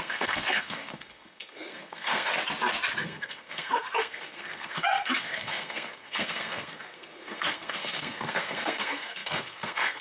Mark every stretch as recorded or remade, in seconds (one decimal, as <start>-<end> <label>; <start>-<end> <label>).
0.0-2.3 remade; 2.3-3.0 recorded; 3.0-10.0 remade

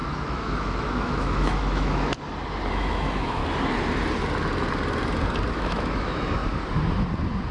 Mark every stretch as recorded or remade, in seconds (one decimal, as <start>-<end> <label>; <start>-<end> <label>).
0.0-2.1 remade; 2.1-2.7 recorded; 2.7-3.4 remade; 3.4-5.5 recorded; 5.5-6.4 remade; 6.4-7.5 recorded